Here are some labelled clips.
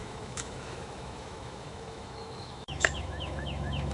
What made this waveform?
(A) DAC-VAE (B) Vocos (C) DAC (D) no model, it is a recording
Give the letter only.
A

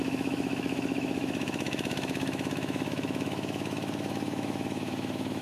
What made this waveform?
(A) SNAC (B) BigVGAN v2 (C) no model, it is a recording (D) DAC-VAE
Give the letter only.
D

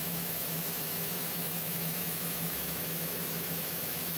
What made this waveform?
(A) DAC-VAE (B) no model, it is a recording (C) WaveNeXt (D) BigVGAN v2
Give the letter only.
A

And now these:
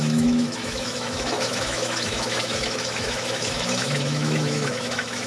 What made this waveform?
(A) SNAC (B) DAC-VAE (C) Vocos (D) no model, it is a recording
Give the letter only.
B